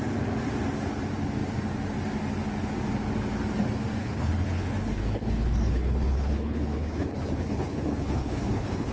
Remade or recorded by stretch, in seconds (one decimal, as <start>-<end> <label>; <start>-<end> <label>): 0.0-4.0 recorded; 4.0-8.9 remade